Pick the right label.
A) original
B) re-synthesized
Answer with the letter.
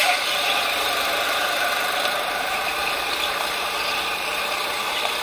B